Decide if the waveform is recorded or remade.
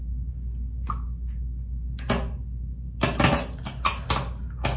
recorded